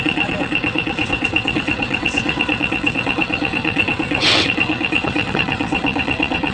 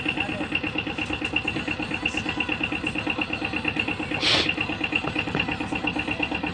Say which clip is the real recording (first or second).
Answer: second